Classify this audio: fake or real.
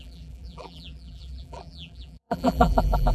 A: fake